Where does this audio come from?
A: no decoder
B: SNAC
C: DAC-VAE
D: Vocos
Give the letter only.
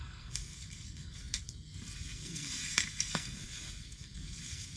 B